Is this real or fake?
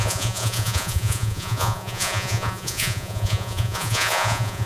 fake